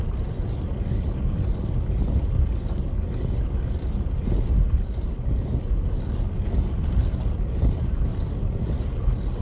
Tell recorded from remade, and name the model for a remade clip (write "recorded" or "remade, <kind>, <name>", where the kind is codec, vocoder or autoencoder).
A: recorded